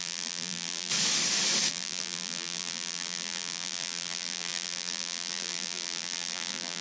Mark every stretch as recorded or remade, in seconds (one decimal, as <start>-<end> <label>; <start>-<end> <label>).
0.0-0.9 remade; 0.9-1.7 recorded; 1.7-6.8 remade